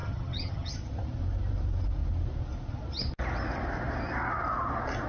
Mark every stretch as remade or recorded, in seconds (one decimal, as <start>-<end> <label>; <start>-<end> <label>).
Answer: 0.0-0.7 remade; 0.7-5.1 recorded